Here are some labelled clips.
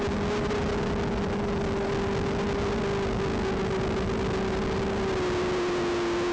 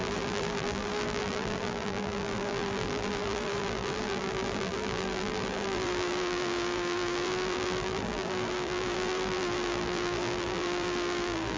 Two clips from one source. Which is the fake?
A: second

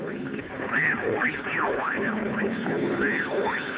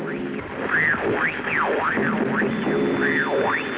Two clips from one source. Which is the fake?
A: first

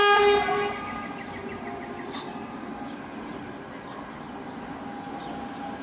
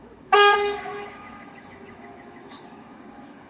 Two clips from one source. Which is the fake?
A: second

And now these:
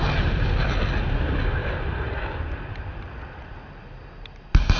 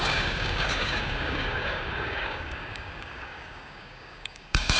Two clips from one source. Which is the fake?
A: second